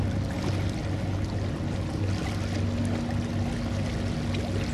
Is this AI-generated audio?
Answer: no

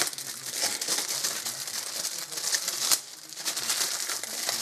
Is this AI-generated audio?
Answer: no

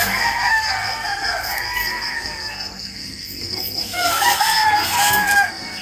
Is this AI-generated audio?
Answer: yes